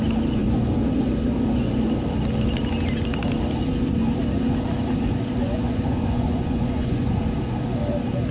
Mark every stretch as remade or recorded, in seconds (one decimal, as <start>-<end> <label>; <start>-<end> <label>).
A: 0.0-5.4 recorded; 5.4-7.2 remade; 7.2-8.3 recorded